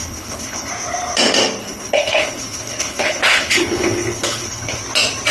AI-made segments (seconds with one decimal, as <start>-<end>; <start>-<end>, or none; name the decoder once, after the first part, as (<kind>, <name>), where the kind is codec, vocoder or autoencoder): 0.0-0.7 (codec, HILCodec); 1.6-4.8